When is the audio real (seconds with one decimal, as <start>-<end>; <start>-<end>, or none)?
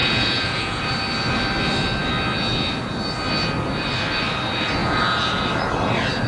0.8-4.8; 5.4-6.3